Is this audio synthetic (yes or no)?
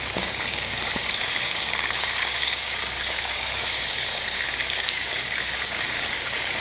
yes